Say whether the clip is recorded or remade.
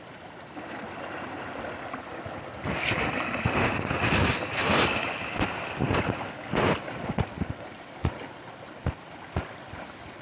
recorded